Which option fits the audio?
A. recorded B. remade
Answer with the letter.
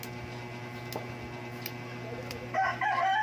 A